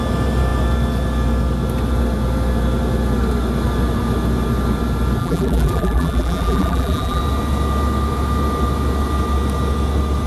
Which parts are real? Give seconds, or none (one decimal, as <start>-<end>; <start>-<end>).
0.0-5.2; 7.2-10.3